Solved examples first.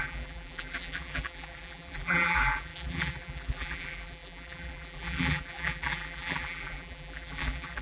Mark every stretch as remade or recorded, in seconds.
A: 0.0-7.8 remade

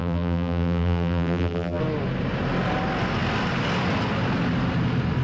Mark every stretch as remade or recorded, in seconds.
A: 0.0-1.8 remade; 1.8-5.2 recorded

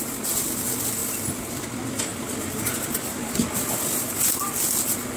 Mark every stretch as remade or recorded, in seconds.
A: 0.0-1.0 recorded; 1.0-1.5 remade; 1.5-2.1 recorded; 2.1-4.2 remade; 4.2-5.2 recorded

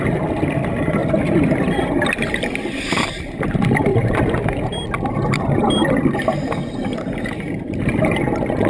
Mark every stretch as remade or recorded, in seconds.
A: 0.0-6.6 remade; 6.6-8.7 recorded

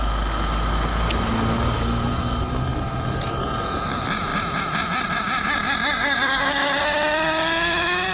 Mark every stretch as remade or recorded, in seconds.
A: 0.0-8.1 recorded

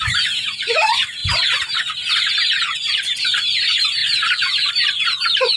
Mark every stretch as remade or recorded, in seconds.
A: 0.0-4.0 recorded; 4.0-4.7 remade; 4.7-5.6 recorded

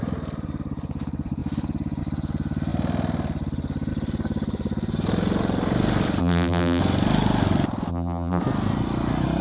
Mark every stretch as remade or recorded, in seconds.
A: 0.0-6.2 recorded; 6.2-6.8 remade; 6.8-7.9 recorded; 7.9-8.4 remade; 8.4-9.4 recorded